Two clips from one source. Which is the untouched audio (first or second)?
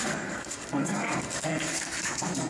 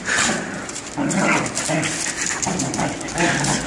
second